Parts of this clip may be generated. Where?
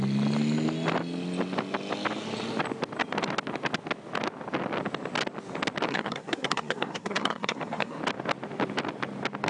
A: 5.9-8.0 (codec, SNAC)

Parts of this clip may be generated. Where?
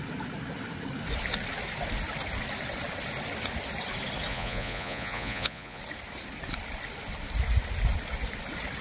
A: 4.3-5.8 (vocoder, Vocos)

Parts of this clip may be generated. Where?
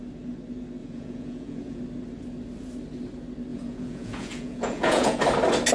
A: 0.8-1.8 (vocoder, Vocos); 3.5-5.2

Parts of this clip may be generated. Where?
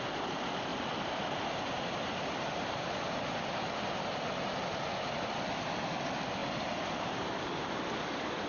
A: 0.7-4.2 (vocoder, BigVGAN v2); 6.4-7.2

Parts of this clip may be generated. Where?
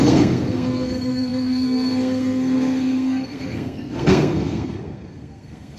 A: 0.0-5.8 (codec, SNAC)